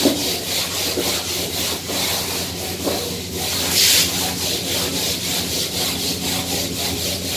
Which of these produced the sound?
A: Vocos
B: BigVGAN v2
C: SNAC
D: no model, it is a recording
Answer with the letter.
D